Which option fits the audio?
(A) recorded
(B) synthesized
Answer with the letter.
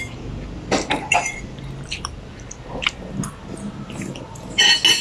A